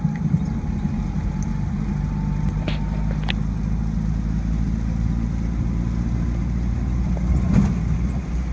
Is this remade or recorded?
recorded